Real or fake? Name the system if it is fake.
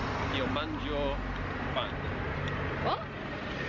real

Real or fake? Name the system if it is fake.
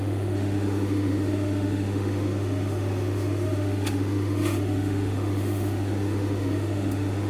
fake, autoencoder, DAC-VAE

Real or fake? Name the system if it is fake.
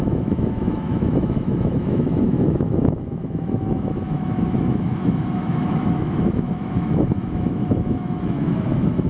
fake, autoencoder, DAC-VAE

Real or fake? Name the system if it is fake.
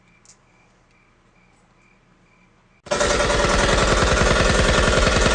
real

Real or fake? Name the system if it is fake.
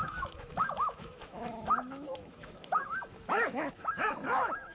fake, autoencoder, DAC-VAE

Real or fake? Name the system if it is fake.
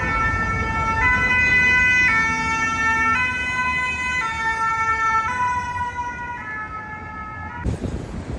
real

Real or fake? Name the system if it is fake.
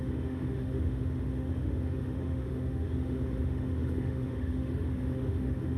fake, autoencoder, DAC-VAE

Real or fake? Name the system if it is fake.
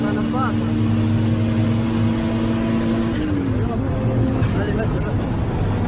real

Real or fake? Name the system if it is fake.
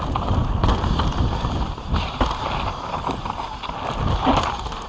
real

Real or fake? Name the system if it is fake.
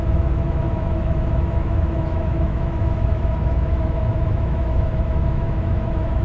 fake, autoencoder, DAC-VAE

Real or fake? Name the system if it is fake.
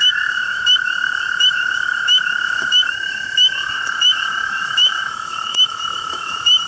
fake, autoencoder, DAC-VAE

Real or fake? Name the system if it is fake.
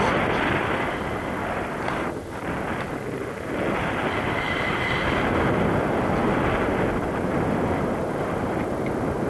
real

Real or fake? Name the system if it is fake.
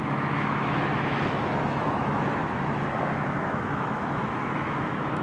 fake, autoencoder, DAC-VAE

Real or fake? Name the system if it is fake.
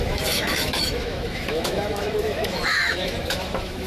fake, autoencoder, DAC-VAE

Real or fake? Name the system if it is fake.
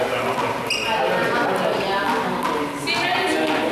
real